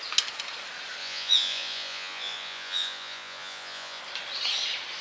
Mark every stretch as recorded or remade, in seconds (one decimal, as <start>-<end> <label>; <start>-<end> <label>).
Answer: 0.0-1.0 recorded; 1.0-4.0 remade; 4.0-5.0 recorded